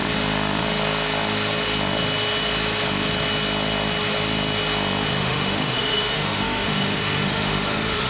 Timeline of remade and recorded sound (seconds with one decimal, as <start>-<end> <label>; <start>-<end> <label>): 0.0-5.2 recorded; 5.2-8.1 remade